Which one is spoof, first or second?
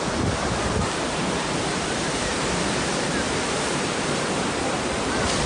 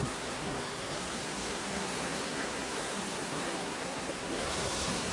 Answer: second